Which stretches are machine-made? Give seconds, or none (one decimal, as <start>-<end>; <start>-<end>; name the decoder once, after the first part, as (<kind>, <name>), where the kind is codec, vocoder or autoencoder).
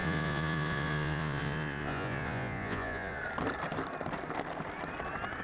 0.0-3.2 (vocoder, Vocos)